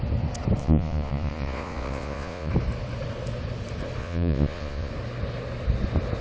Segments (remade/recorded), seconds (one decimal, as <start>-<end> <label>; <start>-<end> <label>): 0.0-0.6 recorded; 0.6-2.5 remade; 2.5-4.0 recorded; 4.0-4.9 remade; 4.9-6.2 recorded